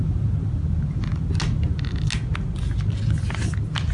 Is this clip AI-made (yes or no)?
no